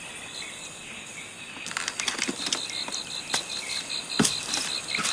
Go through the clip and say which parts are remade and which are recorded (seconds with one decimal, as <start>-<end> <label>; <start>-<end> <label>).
0.0-5.1 recorded